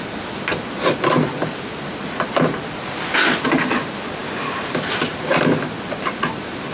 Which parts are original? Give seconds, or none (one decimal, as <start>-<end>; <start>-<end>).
0.0-6.7